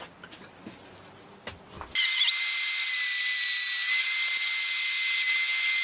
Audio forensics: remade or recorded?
recorded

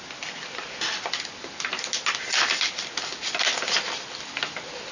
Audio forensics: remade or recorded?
recorded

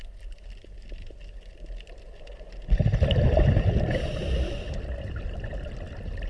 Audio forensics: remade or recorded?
recorded